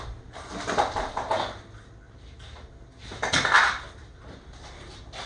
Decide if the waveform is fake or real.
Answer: real